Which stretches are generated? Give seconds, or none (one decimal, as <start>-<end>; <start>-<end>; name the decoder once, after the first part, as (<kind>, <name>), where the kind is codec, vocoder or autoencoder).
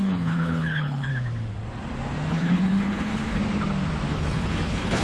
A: 0.0-1.1 (codec, HILCodec); 2.3-3.4; 4.1-5.0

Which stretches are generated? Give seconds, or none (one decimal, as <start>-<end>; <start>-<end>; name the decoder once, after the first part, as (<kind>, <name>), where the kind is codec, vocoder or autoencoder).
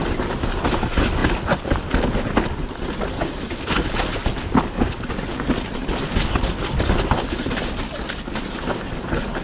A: none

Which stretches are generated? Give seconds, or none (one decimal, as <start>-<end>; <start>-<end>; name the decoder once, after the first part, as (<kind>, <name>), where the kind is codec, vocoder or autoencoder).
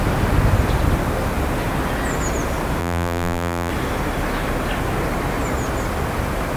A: 2.8-3.7 (vocoder, BigVGAN v2)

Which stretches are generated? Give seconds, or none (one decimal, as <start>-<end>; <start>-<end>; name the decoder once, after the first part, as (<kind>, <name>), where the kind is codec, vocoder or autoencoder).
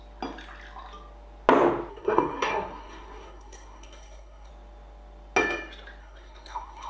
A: 1.9-4.5 (codec, SNAC); 6.0-6.9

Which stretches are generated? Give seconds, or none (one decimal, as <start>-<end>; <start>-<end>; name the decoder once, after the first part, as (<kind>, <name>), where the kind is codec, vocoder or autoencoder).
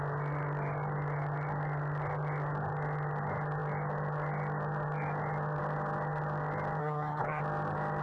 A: 6.8-7.4 (codec, SNAC)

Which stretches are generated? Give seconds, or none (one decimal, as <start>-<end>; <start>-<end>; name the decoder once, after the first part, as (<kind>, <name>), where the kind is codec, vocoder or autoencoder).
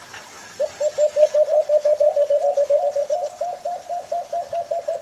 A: 3.0-3.6 (vocoder, Vocos)